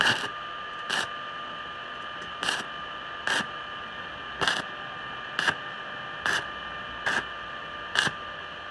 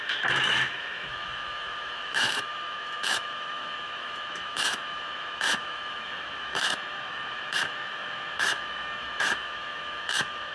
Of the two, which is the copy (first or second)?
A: second